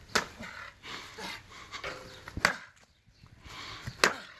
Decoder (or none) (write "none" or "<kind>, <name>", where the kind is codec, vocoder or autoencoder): none